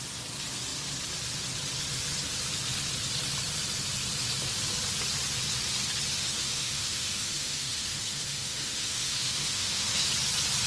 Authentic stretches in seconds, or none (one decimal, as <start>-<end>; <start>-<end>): 0.0-6.2; 10.1-10.7